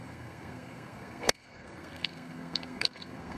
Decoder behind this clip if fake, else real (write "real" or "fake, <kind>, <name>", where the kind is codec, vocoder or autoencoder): fake, codec, SNAC